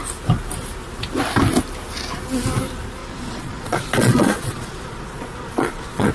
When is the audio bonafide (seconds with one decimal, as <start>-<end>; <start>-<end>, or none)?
0.0-3.0